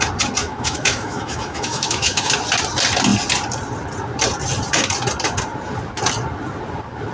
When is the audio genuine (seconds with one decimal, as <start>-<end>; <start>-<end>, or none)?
0.0-0.4; 2.3-7.1